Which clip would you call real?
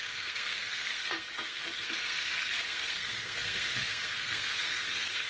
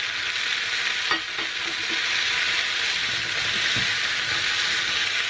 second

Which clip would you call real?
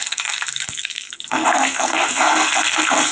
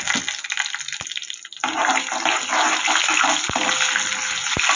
second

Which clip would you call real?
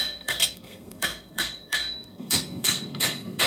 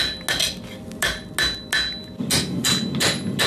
second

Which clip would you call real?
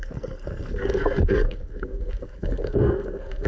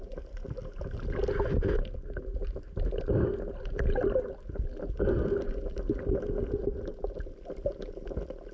second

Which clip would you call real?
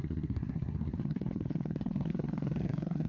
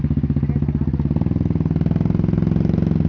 second